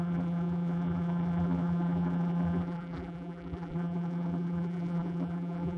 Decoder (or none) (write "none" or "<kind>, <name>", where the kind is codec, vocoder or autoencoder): vocoder, BigVGAN v2